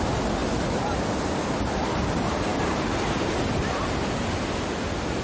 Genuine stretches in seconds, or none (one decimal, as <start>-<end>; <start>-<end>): 0.0-5.2